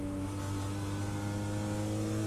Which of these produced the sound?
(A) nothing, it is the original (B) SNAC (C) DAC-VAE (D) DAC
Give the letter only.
A